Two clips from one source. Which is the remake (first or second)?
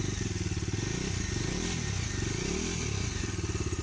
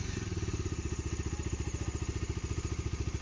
second